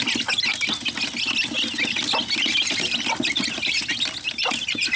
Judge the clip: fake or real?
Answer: real